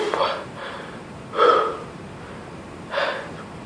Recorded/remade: remade